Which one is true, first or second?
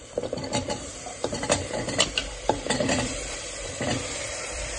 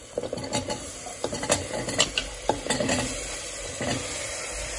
second